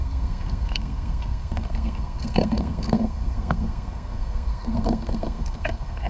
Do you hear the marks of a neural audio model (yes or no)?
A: yes